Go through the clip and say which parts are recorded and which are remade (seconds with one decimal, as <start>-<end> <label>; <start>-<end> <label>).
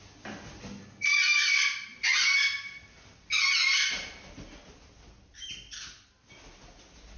0.0-7.2 recorded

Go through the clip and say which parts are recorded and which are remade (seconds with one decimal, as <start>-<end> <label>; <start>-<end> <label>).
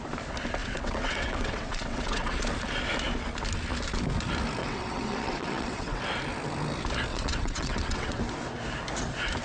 0.0-0.6 recorded; 0.6-2.4 remade; 2.4-4.6 recorded; 4.6-6.0 remade; 6.0-7.1 recorded; 7.1-8.2 remade; 8.2-9.4 recorded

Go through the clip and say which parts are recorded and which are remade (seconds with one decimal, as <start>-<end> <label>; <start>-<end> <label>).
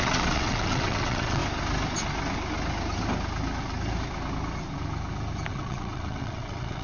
0.0-1.4 remade; 1.4-5.5 recorded; 5.5-6.8 remade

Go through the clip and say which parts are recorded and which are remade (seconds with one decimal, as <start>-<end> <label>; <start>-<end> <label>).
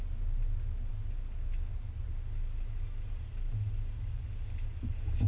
0.0-5.3 recorded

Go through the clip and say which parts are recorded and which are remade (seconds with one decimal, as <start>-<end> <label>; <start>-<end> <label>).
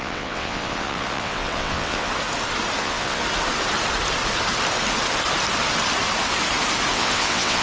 0.0-2.1 remade; 2.1-2.8 recorded; 2.8-3.2 remade; 3.2-6.9 recorded; 6.9-7.6 remade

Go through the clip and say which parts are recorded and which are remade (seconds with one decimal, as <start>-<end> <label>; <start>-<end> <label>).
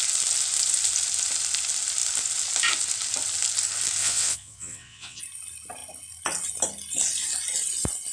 0.0-4.0 recorded; 4.0-5.2 remade; 5.2-8.1 recorded